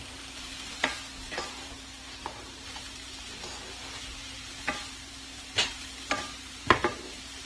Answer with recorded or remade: remade